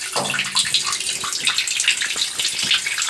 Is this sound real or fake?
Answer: real